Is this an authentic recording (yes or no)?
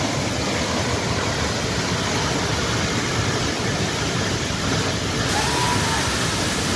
yes